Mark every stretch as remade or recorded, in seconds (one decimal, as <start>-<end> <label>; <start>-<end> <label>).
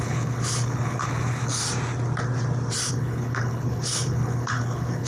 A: 0.0-1.6 remade; 1.6-2.9 recorded; 2.9-5.1 remade